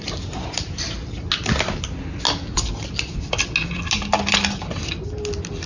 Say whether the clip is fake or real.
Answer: real